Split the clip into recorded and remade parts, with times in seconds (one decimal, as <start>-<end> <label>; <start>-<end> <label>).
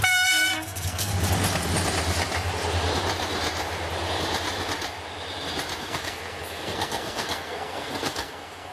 0.0-1.1 remade; 1.1-5.8 recorded; 5.8-8.7 remade